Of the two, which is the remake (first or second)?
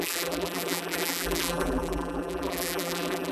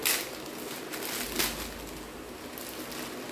first